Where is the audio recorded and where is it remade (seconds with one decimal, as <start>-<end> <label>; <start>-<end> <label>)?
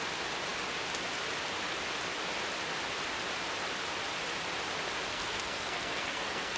0.0-5.1 recorded; 5.1-6.6 remade